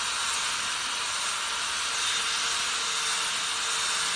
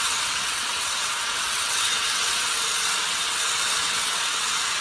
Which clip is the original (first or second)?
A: first